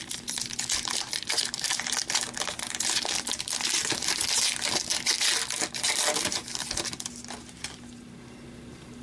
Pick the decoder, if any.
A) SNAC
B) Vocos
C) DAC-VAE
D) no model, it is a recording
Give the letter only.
D